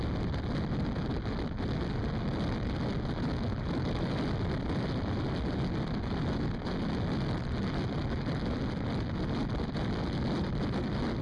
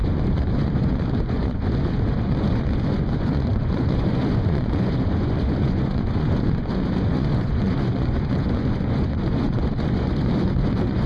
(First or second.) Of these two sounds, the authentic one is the first